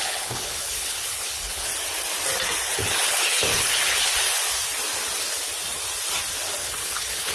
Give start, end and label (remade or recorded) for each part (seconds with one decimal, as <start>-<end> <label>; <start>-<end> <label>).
0.0-1.7 remade; 1.7-2.7 recorded; 2.7-4.1 remade; 4.1-6.6 recorded; 6.6-7.3 remade